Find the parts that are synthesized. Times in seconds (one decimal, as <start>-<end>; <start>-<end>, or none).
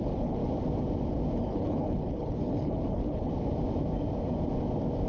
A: 0.0-0.4; 1.4-3.3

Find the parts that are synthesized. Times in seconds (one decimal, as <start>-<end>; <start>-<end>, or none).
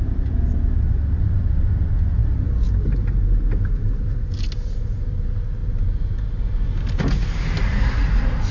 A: none